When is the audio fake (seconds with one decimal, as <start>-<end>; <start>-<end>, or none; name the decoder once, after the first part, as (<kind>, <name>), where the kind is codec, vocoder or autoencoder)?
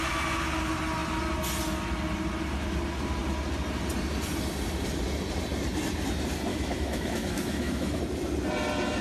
6.5-8.0 (autoencoder, DAC-VAE)